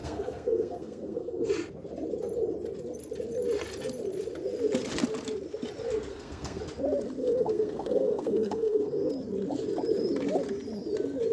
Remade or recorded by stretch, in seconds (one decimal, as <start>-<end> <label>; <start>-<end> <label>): 0.0-1.5 remade; 1.5-6.1 recorded; 6.1-6.6 remade; 6.6-7.2 recorded; 7.2-9.1 remade; 9.1-11.3 recorded